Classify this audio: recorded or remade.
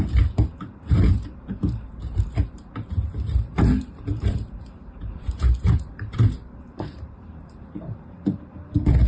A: remade